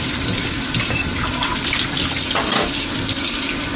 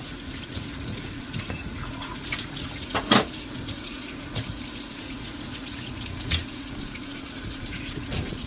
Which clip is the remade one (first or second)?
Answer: second